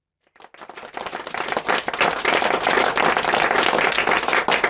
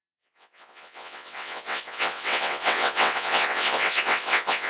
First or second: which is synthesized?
second